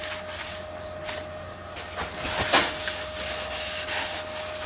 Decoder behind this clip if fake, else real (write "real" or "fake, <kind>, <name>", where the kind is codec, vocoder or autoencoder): real